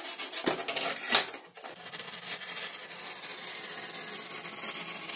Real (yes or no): yes